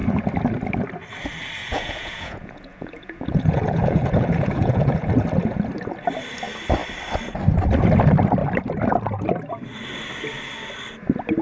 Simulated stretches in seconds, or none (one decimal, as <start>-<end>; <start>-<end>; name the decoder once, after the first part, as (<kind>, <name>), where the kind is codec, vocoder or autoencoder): 1.6-5.1 (vocoder, Vocos)